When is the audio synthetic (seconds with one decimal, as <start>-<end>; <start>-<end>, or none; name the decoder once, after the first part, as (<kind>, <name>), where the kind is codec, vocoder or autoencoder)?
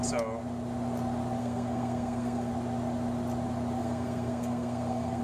1.4-2.5 (codec, SNAC); 3.8-5.2